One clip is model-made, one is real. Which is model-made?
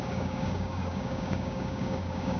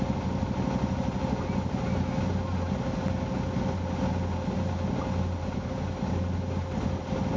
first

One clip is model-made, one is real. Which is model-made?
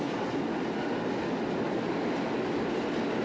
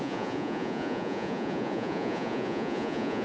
second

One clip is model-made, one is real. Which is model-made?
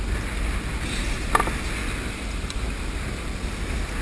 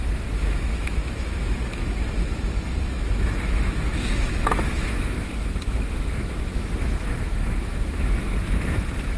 second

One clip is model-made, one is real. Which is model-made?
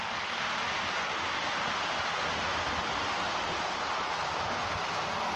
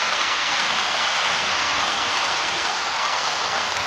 second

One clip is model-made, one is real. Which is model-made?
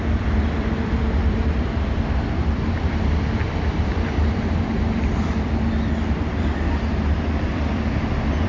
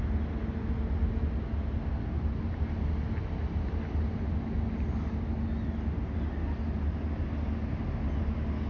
first